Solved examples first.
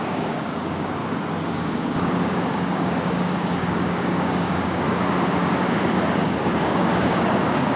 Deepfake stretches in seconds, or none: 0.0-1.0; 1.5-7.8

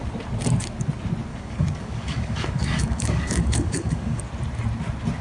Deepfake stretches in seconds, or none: 1.3-4.2

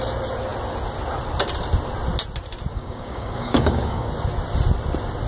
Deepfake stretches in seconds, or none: 2.7-4.1

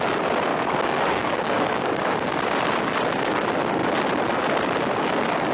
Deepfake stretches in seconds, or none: 0.5-2.0

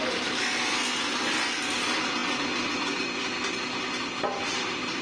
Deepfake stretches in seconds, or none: none

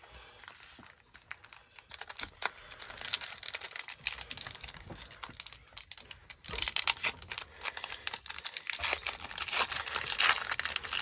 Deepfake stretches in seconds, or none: none